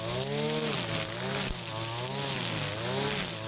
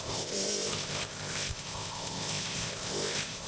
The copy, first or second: second